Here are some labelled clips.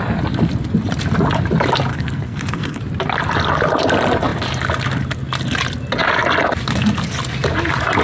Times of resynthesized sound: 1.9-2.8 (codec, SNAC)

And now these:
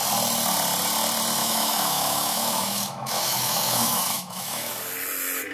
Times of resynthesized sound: 1.4-4.7 (autoencoder, DAC-VAE)

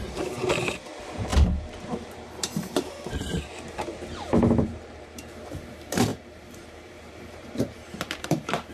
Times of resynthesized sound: 0.0-8.7 (vocoder, BigVGAN v2)

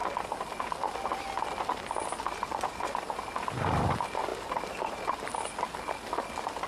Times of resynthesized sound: none

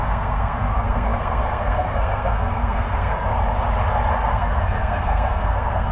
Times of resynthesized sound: 0.0-3.3 (codec, SNAC); 4.3-5.9

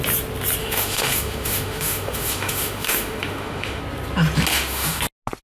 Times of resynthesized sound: 0.6-3.8 (autoencoder, DAC-VAE); 4.5-5.0

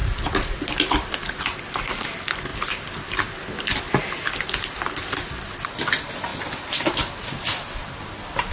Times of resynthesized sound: 0.0-8.5 (vocoder, BigVGAN v2)

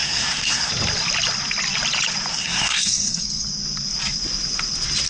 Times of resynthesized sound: 0.0-0.7 (codec, SNAC); 2.3-3.2